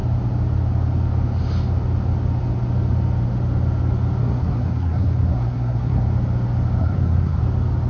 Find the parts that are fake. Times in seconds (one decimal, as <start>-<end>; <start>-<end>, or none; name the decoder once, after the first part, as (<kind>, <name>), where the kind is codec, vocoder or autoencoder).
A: 4.2-6.0 (codec, SNAC); 6.8-7.4